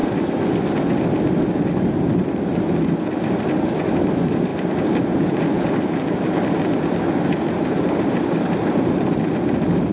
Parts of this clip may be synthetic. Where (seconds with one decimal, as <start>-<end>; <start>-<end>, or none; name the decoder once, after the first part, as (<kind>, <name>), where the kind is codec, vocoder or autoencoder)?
0.0-9.9 (vocoder, BigVGAN v2)

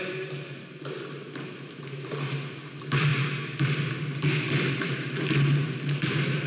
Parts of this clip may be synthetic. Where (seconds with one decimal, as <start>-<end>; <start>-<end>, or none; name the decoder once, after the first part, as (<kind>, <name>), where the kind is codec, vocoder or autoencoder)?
none

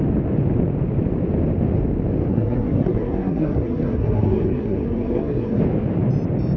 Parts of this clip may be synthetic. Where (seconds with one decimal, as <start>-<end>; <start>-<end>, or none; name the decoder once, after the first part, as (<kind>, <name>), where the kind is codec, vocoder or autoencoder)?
2.3-5.6 (codec, SNAC)

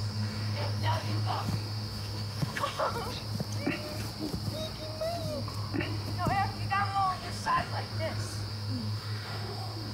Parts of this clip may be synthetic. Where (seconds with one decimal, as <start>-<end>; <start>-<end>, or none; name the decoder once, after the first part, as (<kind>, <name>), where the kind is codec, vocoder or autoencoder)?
0.0-2.9 (autoencoder, DAC-VAE); 6.8-7.9; 8.5-9.9

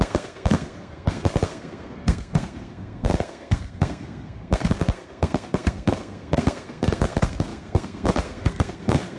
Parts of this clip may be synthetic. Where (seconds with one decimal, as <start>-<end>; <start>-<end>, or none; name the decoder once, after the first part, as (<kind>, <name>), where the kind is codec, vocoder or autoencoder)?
0.0-9.2 (codec, SNAC)

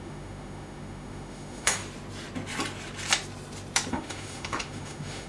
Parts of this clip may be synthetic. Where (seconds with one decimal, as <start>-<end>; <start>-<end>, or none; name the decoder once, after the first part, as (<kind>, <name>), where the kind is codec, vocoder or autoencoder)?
0.0-1.8 (autoencoder, DAC-VAE); 3.9-5.3